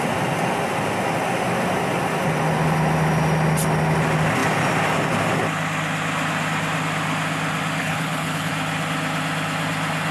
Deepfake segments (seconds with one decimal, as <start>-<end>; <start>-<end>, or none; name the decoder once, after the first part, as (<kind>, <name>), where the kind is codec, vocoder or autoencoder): 7.8-8.5 (codec, HILCodec)